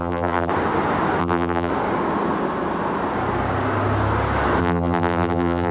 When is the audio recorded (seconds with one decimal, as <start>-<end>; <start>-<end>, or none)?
0.5-1.2; 1.7-4.6